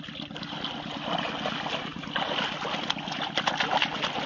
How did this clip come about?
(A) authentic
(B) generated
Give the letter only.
A